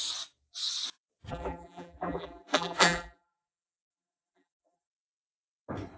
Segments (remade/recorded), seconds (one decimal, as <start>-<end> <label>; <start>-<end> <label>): 0.0-1.3 recorded; 1.3-4.9 remade; 4.9-6.0 recorded